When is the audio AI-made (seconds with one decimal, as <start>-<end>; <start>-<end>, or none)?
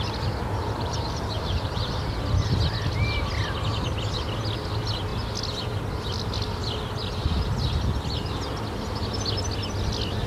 0.4-2.0